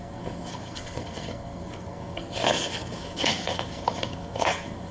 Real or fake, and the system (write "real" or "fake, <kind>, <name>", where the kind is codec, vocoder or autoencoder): fake, codec, SNAC